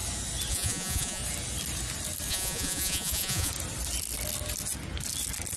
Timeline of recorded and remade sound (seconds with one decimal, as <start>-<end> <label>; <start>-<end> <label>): 0.0-0.5 recorded; 0.5-1.2 remade; 1.2-2.3 recorded; 2.3-3.5 remade; 3.5-5.6 recorded